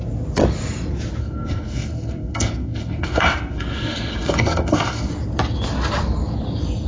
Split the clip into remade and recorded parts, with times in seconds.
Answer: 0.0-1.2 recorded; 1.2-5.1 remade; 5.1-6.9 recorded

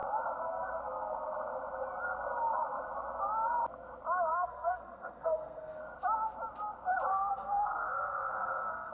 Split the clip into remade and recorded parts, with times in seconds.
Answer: 0.0-4.3 recorded; 4.3-5.8 remade; 5.8-7.1 recorded; 7.1-8.9 remade

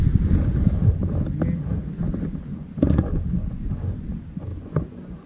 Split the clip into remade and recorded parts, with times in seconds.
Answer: 0.0-2.5 recorded; 2.5-4.1 remade; 4.1-4.5 recorded; 4.5-5.3 remade